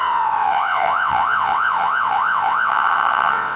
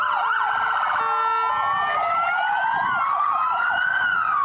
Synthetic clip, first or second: first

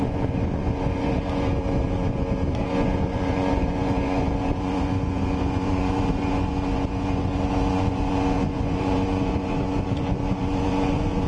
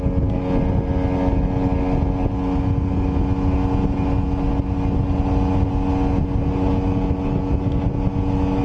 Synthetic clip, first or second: first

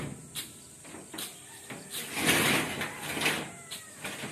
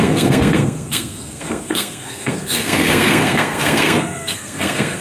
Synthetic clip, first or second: second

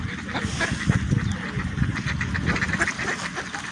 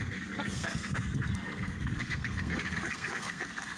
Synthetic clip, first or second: second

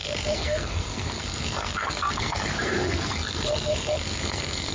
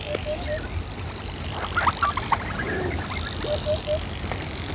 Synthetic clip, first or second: first